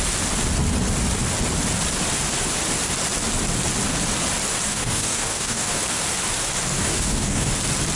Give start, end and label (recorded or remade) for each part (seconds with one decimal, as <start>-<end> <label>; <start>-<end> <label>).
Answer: 0.0-4.7 recorded; 4.7-5.8 remade; 5.8-6.8 recorded; 6.8-7.5 remade; 7.5-8.0 recorded